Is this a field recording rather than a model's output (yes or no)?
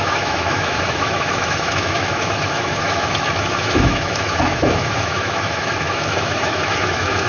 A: no